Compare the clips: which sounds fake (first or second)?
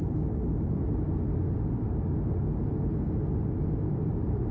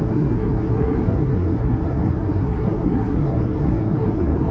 second